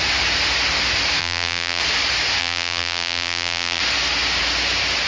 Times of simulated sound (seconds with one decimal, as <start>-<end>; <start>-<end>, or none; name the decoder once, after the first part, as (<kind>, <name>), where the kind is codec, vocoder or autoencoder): 1.2-1.8 (vocoder, BigVGAN v2); 2.4-3.8